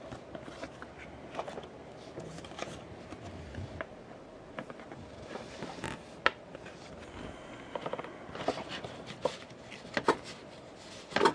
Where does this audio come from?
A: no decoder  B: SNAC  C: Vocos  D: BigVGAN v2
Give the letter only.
A